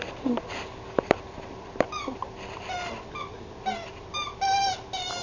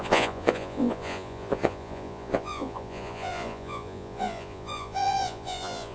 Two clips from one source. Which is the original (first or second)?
first